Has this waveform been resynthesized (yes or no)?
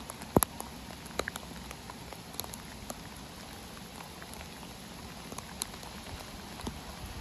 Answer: no